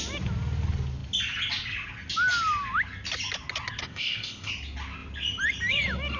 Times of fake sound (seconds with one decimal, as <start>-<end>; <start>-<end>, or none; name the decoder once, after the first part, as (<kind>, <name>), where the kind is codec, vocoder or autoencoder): 3.8-4.5 (codec, ZipCodec)